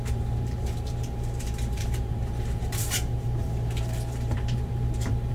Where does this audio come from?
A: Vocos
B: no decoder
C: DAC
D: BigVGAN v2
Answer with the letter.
D